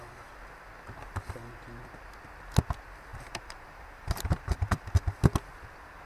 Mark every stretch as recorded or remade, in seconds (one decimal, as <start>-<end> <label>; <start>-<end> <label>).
0.0-3.1 recorded; 3.1-4.8 remade; 4.8-6.1 recorded